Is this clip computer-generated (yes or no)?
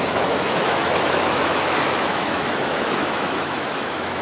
yes